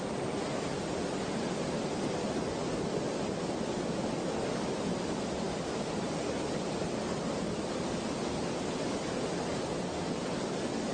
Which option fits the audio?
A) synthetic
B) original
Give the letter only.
B